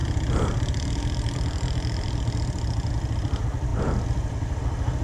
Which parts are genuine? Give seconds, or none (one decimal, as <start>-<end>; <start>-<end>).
0.0-5.0